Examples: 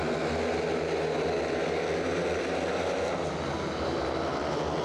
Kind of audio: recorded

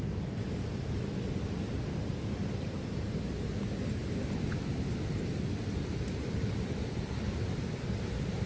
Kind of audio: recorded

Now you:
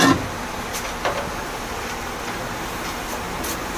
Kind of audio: recorded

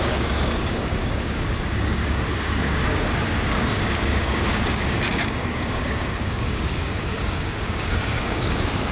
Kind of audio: remade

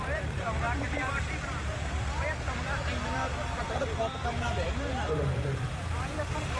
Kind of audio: remade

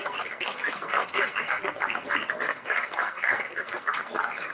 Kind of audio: remade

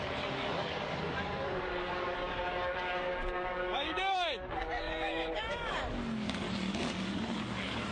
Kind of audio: remade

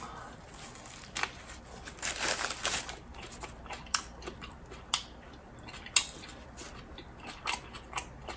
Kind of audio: recorded